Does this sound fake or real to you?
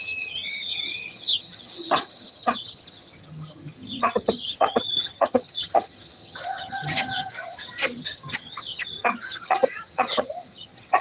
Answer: fake